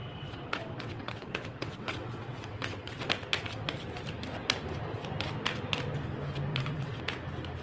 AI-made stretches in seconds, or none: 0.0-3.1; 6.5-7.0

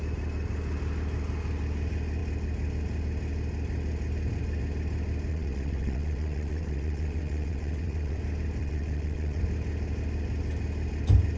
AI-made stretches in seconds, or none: 5.3-8.2; 8.6-9.4

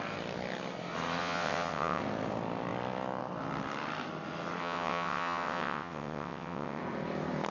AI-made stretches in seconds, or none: 1.2-2.0; 4.6-6.8